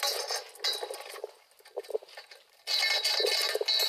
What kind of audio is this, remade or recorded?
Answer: recorded